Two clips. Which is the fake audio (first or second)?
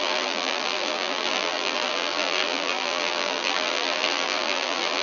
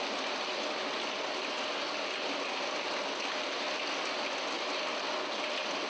first